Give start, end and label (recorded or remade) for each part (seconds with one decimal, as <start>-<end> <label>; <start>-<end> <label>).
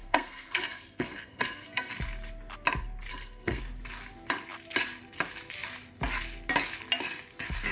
0.0-1.9 remade; 1.9-3.1 recorded; 3.1-3.6 remade; 3.6-7.7 recorded